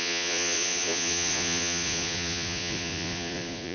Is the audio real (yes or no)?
no